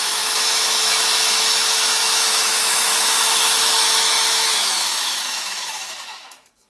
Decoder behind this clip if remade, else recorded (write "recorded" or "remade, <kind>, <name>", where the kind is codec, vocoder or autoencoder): remade, autoencoder, DAC-VAE